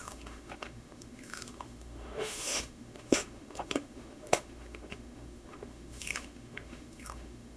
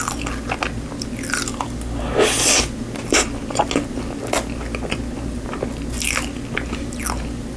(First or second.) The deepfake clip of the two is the first